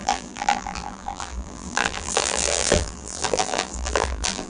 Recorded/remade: remade